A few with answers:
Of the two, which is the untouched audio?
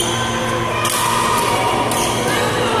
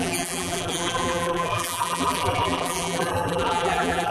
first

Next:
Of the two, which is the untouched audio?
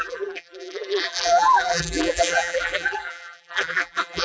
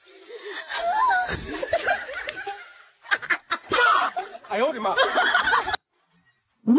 second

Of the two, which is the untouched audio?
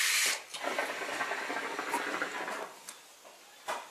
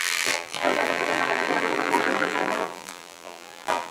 first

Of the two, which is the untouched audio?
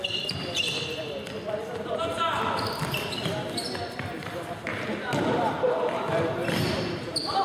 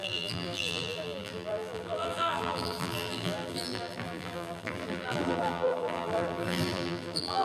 first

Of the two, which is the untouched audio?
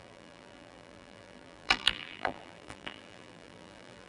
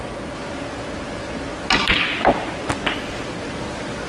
second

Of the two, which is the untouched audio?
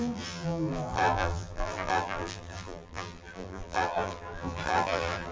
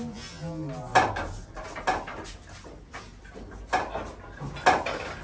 second